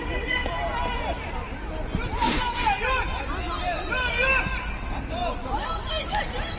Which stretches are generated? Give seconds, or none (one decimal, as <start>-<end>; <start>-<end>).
0.0-0.4; 4.4-6.6